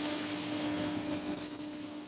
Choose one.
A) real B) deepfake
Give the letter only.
B